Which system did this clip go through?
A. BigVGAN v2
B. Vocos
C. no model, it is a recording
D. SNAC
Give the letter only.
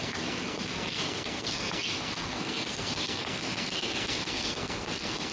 D